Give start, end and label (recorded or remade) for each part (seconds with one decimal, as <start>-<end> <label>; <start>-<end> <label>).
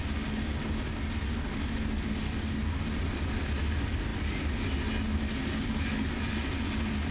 0.0-7.1 recorded